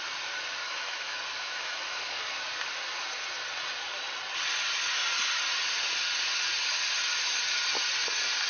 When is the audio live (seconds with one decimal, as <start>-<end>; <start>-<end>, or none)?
0.0-0.6; 2.2-8.5